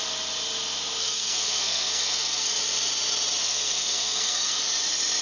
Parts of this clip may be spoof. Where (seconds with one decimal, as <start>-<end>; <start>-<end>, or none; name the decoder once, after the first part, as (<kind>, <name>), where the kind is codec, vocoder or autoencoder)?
1.0-2.6 (codec, SNAC); 3.4-4.6